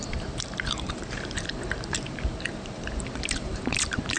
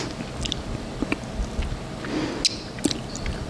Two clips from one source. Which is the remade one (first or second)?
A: first